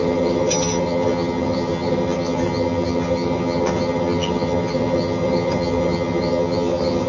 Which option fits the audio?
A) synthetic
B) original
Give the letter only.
A